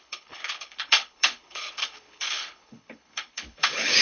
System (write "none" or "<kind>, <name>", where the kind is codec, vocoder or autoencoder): codec, HILCodec